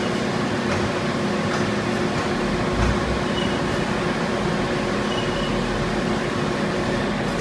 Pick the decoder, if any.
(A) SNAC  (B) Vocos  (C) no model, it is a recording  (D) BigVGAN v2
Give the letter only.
C